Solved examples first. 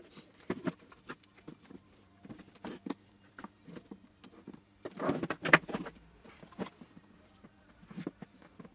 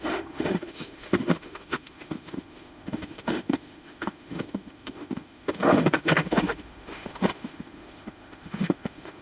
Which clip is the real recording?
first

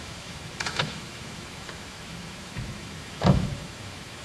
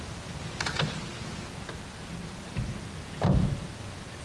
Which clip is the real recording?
second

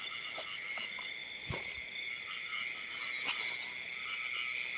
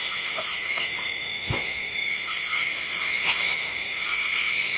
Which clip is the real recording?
first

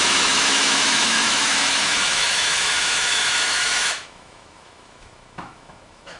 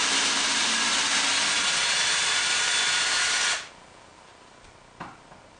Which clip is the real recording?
second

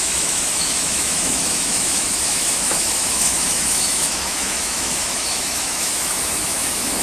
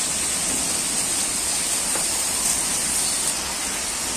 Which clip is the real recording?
second